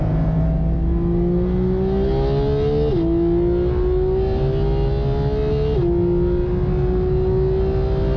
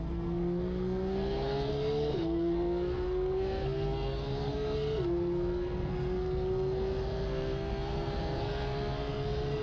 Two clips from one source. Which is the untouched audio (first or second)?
first